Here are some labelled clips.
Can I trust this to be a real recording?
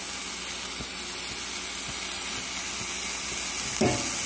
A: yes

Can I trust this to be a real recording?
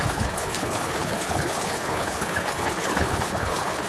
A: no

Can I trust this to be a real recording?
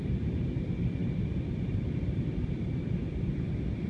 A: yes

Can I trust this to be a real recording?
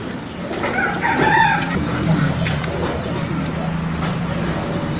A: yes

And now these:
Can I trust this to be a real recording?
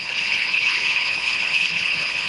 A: no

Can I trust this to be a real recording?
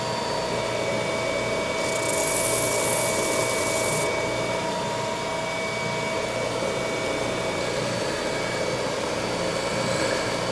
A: yes